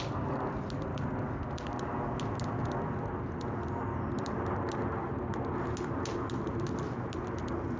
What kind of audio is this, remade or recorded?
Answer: recorded